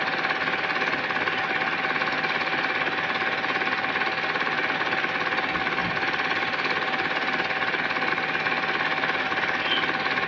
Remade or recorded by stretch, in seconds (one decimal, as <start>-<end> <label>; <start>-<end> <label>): 0.0-10.3 recorded